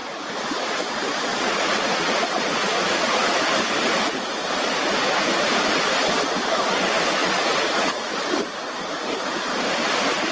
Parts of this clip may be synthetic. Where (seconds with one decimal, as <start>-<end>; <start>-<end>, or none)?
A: 0.0-0.8; 1.3-3.3; 7.2-8.1